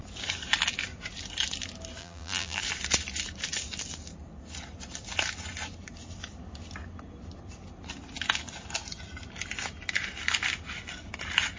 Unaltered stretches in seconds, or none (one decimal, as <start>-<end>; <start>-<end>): 0.0-2.0; 2.6-11.6